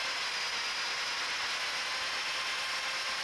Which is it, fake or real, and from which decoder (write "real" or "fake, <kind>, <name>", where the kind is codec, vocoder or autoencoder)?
real